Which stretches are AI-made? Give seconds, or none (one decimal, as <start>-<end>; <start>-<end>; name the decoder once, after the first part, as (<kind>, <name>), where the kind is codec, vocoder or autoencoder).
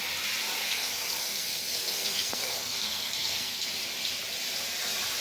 0.6-3.7 (codec, SNAC)